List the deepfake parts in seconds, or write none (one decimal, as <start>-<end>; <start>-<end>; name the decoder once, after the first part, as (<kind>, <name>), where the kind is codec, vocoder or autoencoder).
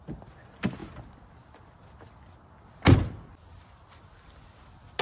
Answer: none